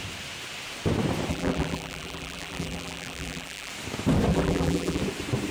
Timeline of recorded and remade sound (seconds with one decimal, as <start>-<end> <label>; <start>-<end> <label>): 0.0-1.3 recorded; 1.3-3.7 remade; 3.7-4.3 recorded; 4.3-5.0 remade; 5.0-5.5 recorded